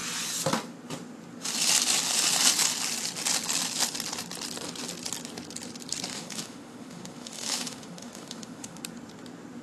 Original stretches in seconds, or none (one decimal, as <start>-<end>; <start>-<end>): 0.0-6.1; 8.8-9.6